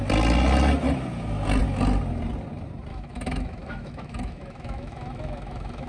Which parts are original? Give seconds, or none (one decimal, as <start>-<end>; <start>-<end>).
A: 0.0-2.9